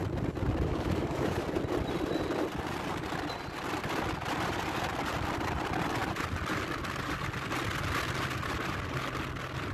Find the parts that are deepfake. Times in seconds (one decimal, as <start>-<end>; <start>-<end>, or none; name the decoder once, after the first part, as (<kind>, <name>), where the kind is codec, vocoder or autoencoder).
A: 0.7-1.4 (codec, DAC)